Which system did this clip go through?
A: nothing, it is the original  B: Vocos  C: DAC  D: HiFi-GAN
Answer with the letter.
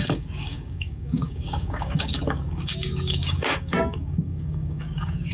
C